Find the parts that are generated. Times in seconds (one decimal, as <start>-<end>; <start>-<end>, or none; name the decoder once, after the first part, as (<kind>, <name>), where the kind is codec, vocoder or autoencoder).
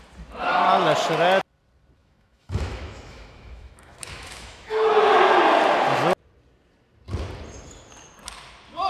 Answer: 2.0-4.9 (autoencoder, DAC-VAE)